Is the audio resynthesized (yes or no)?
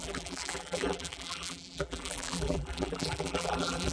yes